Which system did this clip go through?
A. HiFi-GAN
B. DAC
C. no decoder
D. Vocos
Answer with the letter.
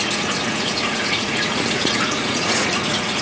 D